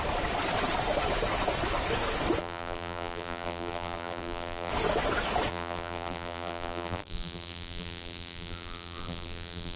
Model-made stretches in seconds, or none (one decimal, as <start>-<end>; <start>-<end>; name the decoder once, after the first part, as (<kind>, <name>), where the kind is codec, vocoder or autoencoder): 2.4-4.7 (vocoder, BigVGAN v2); 5.5-9.8